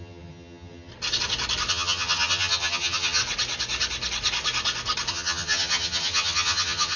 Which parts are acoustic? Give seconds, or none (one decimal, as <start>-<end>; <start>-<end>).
0.9-1.7; 3.2-5.1

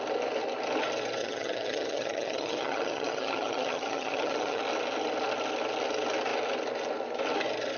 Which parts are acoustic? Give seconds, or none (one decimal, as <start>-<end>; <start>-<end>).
0.0-1.2; 4.6-7.8

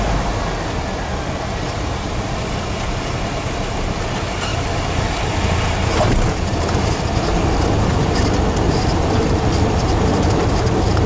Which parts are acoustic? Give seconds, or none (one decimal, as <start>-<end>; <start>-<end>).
0.0-11.1

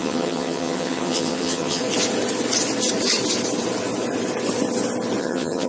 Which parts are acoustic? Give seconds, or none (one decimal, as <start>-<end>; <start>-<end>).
1.8-5.2

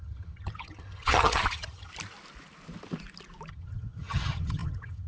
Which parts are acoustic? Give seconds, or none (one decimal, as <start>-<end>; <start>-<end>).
1.9-3.5

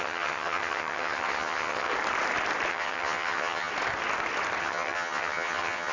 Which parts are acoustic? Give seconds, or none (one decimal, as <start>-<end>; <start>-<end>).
1.9-2.7; 3.7-4.6

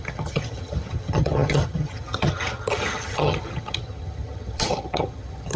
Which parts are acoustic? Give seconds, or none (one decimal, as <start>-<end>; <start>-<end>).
none

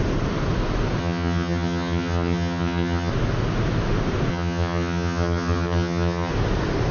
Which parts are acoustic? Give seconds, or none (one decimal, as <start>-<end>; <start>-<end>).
0.0-1.0; 3.1-4.3; 6.3-6.9